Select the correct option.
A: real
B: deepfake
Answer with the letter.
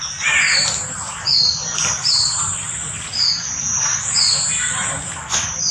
A